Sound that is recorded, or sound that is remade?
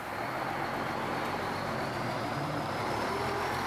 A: recorded